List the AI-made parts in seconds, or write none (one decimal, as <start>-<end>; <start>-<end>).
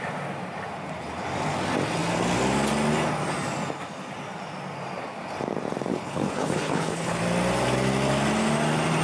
5.9-7.2